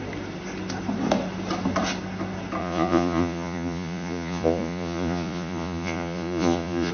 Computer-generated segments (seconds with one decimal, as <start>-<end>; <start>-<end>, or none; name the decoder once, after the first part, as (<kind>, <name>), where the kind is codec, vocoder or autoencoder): 2.6-6.9 (vocoder, Vocos)